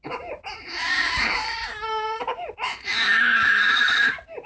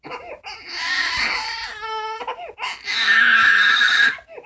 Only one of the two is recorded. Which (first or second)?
second